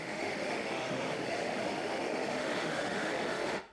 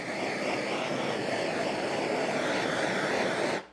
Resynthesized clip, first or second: first